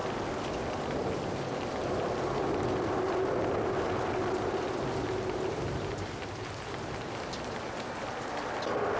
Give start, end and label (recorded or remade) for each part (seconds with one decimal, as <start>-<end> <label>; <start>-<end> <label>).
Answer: 0.0-9.0 recorded